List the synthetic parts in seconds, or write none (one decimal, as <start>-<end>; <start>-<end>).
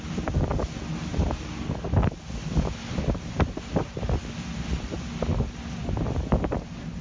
none